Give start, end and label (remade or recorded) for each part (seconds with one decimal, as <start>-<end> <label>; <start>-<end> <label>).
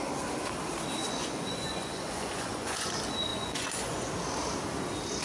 0.0-1.0 recorded; 1.0-2.9 remade; 2.9-3.3 recorded; 3.3-4.1 remade; 4.1-5.2 recorded